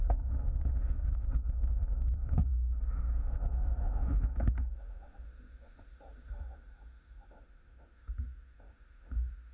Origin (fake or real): fake